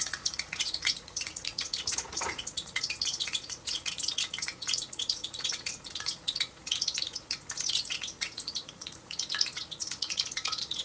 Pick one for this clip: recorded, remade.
remade